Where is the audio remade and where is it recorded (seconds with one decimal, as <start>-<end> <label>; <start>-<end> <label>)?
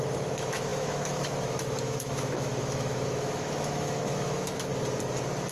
0.0-4.7 remade; 4.7-5.5 recorded